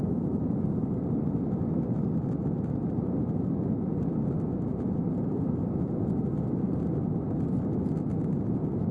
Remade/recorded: recorded